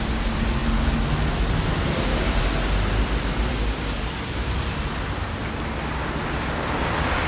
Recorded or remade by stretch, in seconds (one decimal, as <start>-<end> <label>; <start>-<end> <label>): 0.0-7.3 recorded

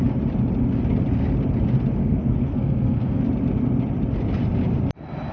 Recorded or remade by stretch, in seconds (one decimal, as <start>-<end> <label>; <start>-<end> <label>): 0.0-2.0 recorded; 2.0-3.2 remade; 3.2-5.3 recorded

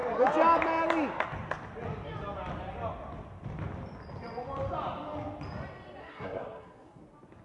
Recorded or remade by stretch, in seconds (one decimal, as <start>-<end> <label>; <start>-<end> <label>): 0.0-6.0 recorded; 6.0-7.0 remade; 7.0-7.4 recorded

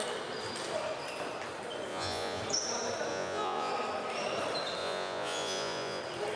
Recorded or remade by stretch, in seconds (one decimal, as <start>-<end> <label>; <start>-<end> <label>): 0.0-1.9 recorded; 1.9-2.4 remade; 2.4-3.1 recorded; 3.1-3.7 remade; 3.7-4.8 recorded; 4.8-6.0 remade; 6.0-6.4 recorded

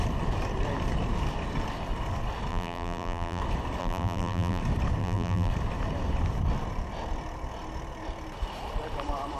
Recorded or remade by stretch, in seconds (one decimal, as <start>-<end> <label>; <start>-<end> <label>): 0.0-2.5 recorded; 2.5-3.4 remade; 3.4-3.8 recorded; 3.8-4.6 remade; 4.6-5.0 recorded; 5.0-5.5 remade; 5.5-9.4 recorded

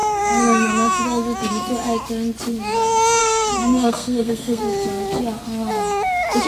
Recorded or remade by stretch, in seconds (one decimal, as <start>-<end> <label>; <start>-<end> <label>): 0.0-0.7 remade; 0.7-3.2 recorded; 3.2-4.6 remade; 4.6-6.5 recorded